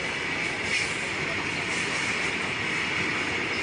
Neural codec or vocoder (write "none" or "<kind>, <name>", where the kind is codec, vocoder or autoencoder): none